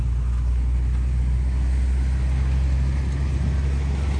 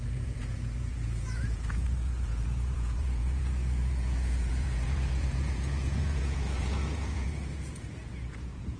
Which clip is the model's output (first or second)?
second